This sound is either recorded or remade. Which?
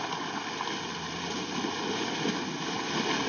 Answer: recorded